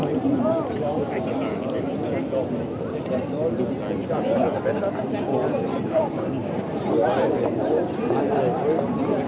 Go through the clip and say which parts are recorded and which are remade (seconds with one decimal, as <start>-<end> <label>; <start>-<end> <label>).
0.0-1.9 remade; 1.9-4.0 recorded; 4.0-4.9 remade; 4.9-5.4 recorded; 5.4-8.1 remade; 8.1-9.3 recorded